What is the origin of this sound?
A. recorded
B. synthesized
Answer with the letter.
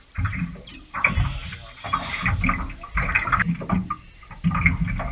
A